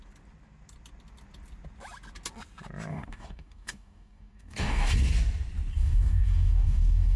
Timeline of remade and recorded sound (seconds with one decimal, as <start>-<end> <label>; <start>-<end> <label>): 0.0-2.9 recorded; 2.9-4.9 remade; 4.9-5.7 recorded; 5.7-7.2 remade